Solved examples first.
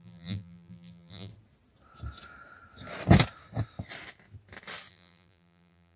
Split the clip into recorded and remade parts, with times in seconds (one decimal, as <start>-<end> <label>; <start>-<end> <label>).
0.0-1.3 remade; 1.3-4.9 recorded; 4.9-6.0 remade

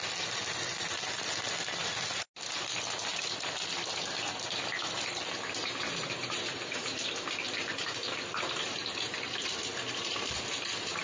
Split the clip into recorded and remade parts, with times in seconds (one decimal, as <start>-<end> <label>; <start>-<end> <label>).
0.0-1.8 recorded; 1.8-2.3 remade; 2.3-5.6 recorded; 5.6-7.1 remade; 7.1-11.0 recorded

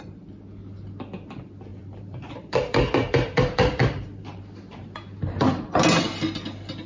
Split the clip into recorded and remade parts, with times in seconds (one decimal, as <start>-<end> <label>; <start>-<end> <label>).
0.0-1.7 recorded; 1.7-4.4 remade; 4.4-6.9 recorded

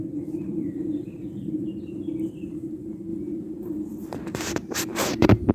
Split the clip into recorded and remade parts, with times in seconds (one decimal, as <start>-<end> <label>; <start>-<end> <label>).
0.0-5.5 remade

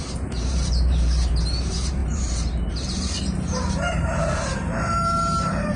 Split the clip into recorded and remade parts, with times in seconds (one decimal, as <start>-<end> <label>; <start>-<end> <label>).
0.0-5.8 remade

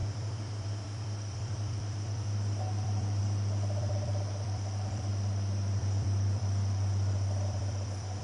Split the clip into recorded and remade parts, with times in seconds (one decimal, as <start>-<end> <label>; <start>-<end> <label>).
0.0-5.1 remade; 5.1-5.8 recorded; 5.8-8.2 remade